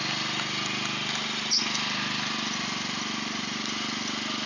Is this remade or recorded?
recorded